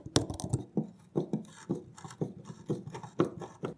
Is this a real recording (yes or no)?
yes